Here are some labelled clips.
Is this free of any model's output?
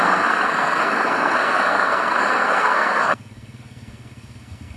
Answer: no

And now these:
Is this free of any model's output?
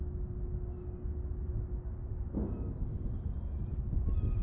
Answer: yes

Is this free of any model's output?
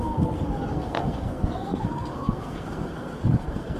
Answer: no